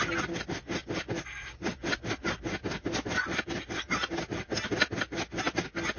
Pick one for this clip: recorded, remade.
recorded